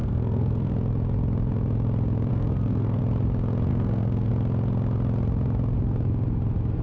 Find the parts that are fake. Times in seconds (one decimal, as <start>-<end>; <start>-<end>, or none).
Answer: 0.0-0.7; 2.3-3.0; 3.7-4.3

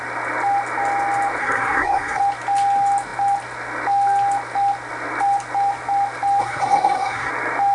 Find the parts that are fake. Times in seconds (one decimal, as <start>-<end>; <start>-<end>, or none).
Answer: 1.4-2.2; 6.4-7.3